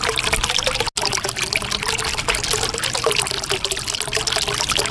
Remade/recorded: recorded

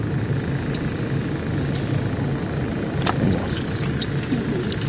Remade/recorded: recorded